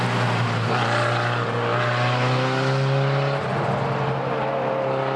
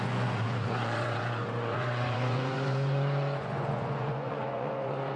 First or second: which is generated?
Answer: second